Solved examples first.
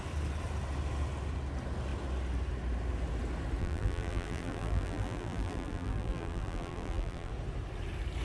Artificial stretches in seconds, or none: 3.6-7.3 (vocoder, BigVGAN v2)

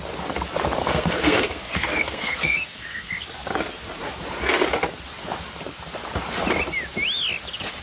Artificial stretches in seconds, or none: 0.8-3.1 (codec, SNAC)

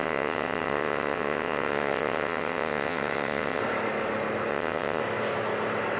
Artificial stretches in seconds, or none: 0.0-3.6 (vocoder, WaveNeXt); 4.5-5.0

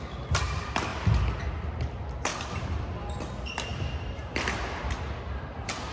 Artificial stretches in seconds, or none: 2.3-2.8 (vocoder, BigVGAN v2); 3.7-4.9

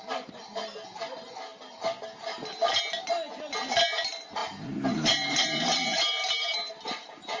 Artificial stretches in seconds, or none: 4.4-6.7 (vocoder, BigVGAN v2)